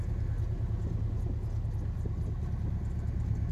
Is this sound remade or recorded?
recorded